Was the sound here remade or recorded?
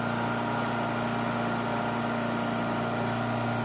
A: recorded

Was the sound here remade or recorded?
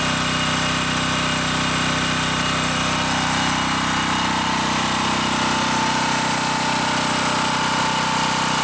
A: recorded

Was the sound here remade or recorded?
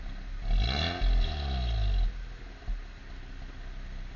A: recorded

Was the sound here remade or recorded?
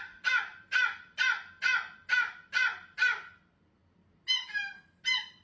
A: recorded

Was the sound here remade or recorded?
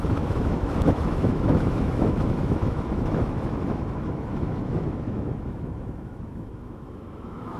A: remade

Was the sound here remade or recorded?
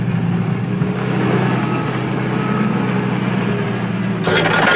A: recorded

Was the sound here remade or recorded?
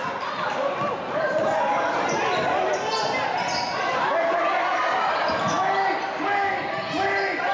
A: recorded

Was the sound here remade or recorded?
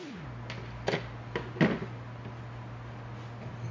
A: recorded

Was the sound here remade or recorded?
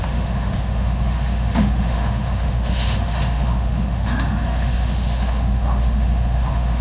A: remade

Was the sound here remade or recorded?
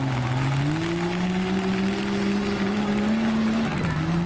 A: recorded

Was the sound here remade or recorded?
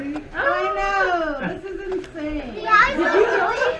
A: recorded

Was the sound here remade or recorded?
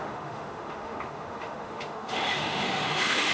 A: remade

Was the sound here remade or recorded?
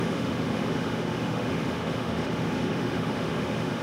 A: remade